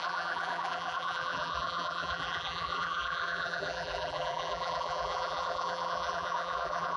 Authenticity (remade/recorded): remade